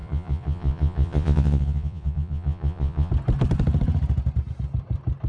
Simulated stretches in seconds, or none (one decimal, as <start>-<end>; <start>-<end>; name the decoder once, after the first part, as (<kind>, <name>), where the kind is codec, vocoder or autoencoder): 0.0-3.1 (vocoder, Vocos)